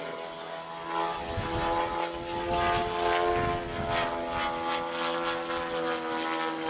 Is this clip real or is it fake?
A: real